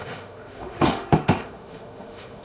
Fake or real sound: fake